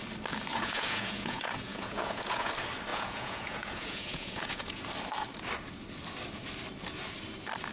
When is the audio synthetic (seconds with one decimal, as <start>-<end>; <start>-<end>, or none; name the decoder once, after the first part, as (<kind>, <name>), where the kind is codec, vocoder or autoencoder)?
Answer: 0.5-2.5 (vocoder, Vocos); 2.9-4.8